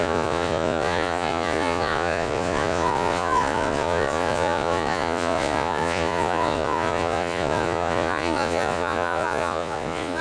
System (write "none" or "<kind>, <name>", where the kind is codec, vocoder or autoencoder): vocoder, Vocos